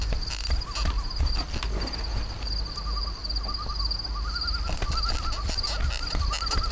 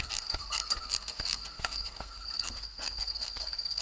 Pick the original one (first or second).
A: first